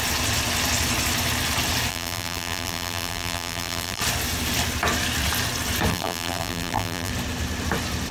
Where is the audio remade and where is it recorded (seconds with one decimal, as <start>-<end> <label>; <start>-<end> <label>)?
0.0-1.9 recorded; 1.9-4.0 remade; 4.0-5.9 recorded; 5.9-7.1 remade; 7.1-8.1 recorded